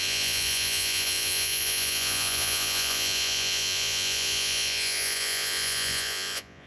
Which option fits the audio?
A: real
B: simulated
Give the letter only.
B